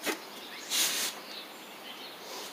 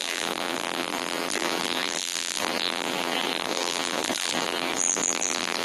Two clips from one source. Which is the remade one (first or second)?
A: second